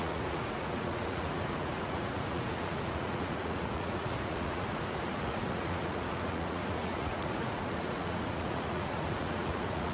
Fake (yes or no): yes